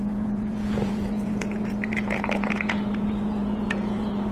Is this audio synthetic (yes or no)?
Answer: yes